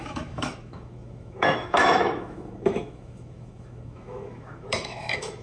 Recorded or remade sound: remade